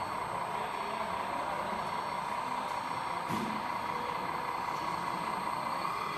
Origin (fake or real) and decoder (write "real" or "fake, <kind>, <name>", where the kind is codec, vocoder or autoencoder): real